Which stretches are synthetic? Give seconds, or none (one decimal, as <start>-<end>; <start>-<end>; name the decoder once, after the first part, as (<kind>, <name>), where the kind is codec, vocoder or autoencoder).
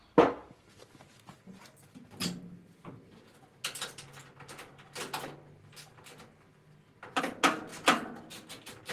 none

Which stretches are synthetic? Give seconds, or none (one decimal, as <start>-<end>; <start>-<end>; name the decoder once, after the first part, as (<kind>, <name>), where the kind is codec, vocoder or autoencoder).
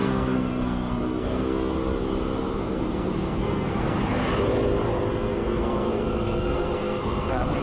0.0-1.7 (codec, SNAC); 2.6-4.0; 5.1-7.6